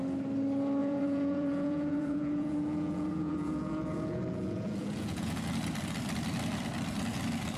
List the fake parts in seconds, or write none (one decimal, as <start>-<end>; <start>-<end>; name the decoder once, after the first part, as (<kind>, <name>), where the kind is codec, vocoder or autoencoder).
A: 0.8-5.4 (vocoder, Vocos)